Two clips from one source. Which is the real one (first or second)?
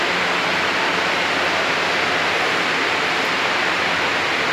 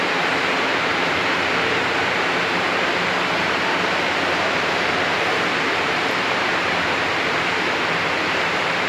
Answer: first